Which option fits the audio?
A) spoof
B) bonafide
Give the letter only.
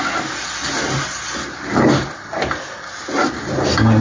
B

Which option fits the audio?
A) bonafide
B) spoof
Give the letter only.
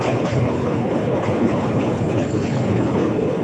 B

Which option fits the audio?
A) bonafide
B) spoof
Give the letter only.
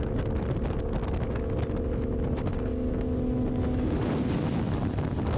A